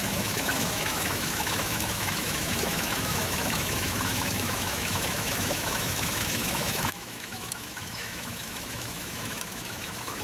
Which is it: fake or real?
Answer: fake